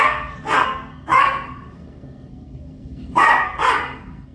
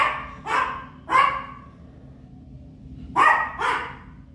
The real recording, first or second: second